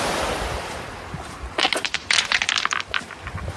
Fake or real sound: fake